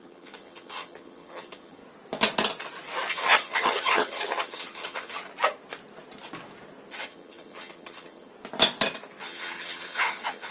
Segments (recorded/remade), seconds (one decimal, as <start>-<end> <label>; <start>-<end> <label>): 0.0-1.8 remade; 1.8-3.1 recorded; 3.1-5.2 remade; 5.2-6.9 recorded; 6.9-8.3 remade; 8.3-9.2 recorded; 9.2-10.5 remade